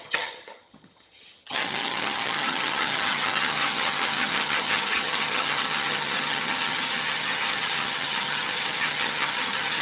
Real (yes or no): no